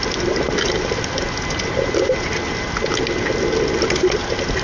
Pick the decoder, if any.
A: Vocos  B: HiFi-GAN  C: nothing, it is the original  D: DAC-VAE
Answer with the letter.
C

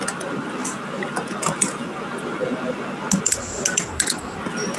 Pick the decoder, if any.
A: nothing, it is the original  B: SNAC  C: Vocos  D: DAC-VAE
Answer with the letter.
A